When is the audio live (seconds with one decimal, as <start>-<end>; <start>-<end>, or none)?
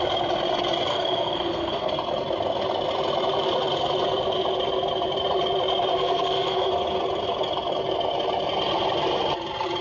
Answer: 0.0-0.9; 1.9-5.9; 6.7-9.8